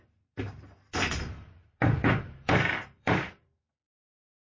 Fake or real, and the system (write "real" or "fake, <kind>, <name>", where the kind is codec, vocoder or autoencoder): fake, vocoder, BigVGAN v2